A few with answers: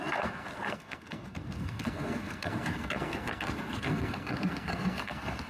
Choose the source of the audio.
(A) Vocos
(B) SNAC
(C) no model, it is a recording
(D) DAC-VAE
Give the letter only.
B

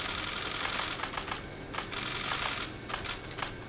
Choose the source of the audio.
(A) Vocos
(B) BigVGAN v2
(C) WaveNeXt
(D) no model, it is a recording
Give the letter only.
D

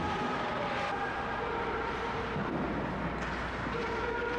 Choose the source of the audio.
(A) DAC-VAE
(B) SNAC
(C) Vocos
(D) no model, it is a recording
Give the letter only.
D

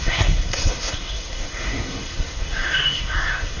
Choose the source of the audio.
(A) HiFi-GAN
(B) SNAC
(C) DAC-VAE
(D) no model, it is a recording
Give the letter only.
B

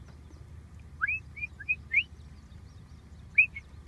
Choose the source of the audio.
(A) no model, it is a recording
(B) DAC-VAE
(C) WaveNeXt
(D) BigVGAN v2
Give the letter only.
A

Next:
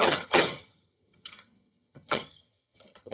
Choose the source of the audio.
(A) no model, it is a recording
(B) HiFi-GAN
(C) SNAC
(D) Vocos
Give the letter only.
B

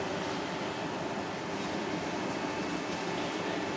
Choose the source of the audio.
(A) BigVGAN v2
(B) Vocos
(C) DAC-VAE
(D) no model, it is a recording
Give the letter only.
A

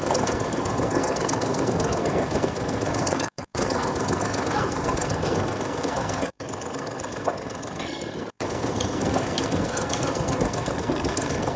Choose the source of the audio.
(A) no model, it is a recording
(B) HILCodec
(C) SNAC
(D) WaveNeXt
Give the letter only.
C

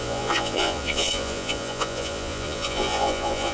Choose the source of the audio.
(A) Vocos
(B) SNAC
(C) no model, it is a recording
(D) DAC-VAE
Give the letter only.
A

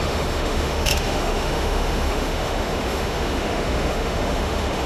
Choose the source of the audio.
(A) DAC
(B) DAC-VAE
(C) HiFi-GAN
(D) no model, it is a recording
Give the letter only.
B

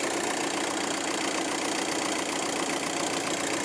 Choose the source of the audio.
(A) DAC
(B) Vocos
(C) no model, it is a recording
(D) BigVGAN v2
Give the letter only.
C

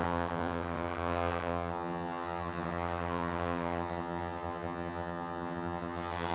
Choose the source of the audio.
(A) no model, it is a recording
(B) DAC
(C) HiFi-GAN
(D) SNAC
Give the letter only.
C